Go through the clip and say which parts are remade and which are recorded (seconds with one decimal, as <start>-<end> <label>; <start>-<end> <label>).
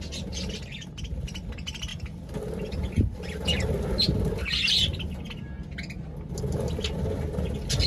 0.0-7.9 recorded